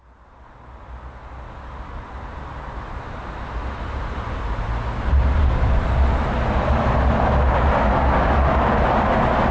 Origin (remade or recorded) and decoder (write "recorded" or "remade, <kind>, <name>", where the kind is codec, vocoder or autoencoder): recorded